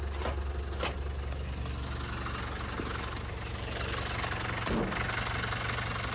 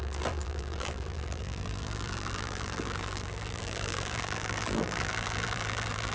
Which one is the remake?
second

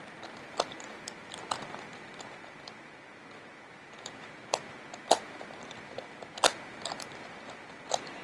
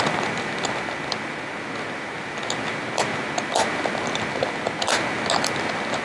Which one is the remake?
first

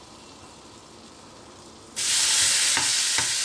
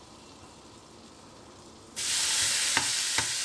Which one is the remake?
second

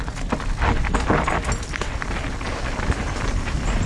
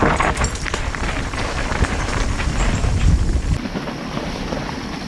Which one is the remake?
second